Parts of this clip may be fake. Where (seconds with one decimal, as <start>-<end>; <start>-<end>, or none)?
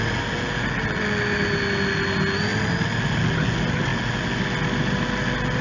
none